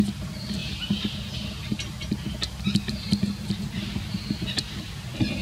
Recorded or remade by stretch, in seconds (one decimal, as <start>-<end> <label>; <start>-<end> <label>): 0.0-5.4 recorded